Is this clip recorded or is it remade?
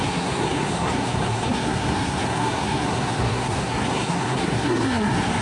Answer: remade